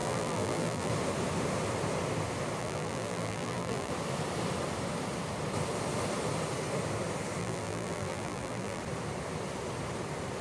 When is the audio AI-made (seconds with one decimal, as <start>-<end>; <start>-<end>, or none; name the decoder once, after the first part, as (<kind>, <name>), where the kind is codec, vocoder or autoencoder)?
0.0-0.9 (vocoder, BigVGAN v2); 2.6-3.9; 7.4-8.8